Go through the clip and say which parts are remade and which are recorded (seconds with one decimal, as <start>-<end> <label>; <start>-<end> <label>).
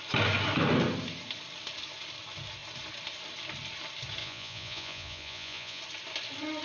0.0-4.2 recorded; 4.2-5.8 remade; 5.8-6.6 recorded